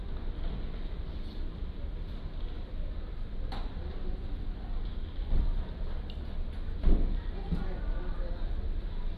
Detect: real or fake real